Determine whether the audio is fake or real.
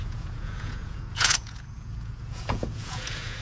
fake